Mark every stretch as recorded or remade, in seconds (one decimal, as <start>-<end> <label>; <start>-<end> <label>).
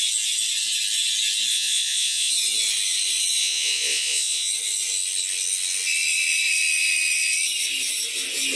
0.0-1.5 recorded; 1.5-2.3 remade; 2.3-3.4 recorded; 3.4-4.5 remade; 4.5-8.6 recorded